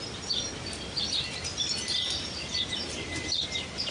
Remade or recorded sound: recorded